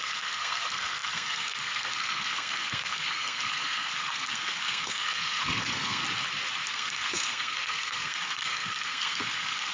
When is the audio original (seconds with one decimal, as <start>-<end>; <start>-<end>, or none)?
6.0-6.7